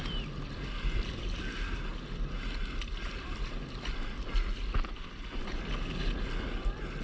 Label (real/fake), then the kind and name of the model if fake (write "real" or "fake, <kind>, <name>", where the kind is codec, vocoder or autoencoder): real